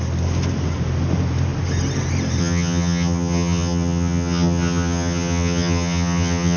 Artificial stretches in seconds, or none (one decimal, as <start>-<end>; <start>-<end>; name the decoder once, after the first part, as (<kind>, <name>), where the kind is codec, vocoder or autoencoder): 2.4-6.6 (vocoder, HiFi-GAN)